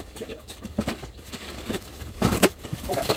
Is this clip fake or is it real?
fake